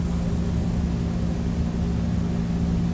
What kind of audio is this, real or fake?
real